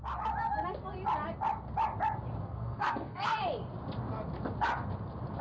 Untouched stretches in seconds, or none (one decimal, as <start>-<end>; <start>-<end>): 0.0-2.4; 3.4-5.4